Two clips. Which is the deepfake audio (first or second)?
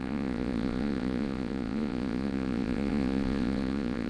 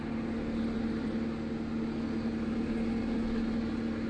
first